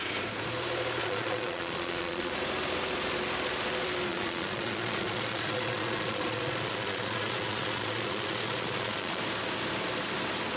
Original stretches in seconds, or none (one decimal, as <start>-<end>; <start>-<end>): 0.0-1.0; 2.3-4.1; 9.2-10.6